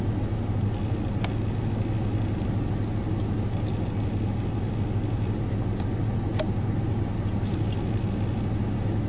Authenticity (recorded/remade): recorded